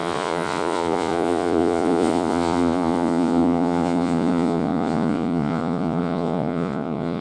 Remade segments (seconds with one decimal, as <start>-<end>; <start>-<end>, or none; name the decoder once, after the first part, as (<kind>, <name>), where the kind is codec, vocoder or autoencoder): 0.0-7.2 (vocoder, Vocos)